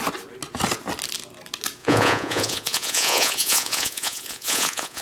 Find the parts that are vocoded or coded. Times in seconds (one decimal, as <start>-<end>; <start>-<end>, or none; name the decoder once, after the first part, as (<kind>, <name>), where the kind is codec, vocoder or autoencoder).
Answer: 1.8-5.0 (vocoder, Vocos)